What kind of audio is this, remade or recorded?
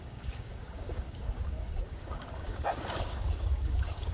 remade